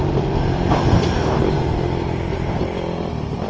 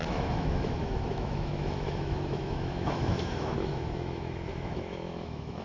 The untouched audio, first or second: first